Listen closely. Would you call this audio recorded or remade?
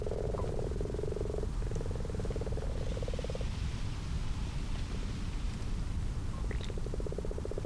recorded